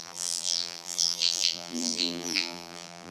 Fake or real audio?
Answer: fake